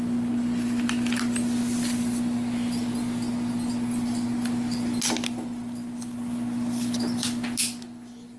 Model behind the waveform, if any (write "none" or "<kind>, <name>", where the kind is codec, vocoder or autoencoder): none